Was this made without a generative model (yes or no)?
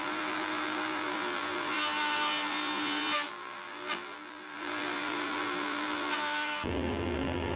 no